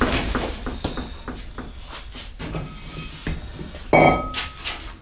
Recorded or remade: recorded